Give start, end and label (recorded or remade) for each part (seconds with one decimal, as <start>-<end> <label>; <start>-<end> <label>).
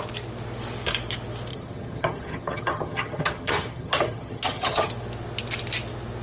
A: 0.0-1.5 recorded; 1.5-4.9 remade; 4.9-6.2 recorded